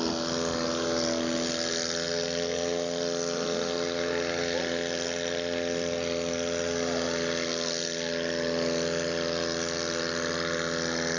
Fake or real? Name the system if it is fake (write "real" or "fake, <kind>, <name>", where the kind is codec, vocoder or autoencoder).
real